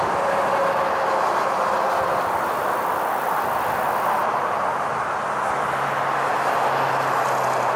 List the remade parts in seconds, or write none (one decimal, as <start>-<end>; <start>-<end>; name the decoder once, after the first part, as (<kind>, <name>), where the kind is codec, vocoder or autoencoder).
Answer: none